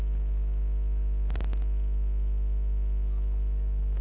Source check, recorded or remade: recorded